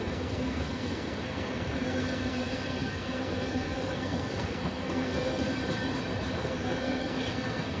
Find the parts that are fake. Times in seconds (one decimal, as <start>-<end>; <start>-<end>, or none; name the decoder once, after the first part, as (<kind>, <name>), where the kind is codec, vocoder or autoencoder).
0.0-5.6 (codec, SNAC); 6.4-7.8